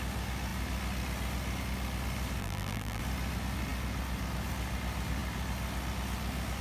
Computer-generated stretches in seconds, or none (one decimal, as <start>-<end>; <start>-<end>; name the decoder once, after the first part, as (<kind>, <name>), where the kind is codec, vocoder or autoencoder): 2.4-3.0 (vocoder, BigVGAN v2)